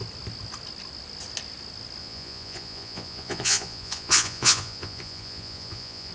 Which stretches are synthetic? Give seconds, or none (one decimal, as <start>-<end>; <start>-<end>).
2.0-6.1